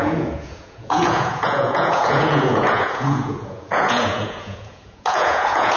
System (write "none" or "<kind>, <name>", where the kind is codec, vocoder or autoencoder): vocoder, Vocos